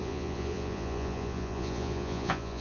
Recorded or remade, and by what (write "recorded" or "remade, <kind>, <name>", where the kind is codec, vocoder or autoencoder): remade, vocoder, Vocos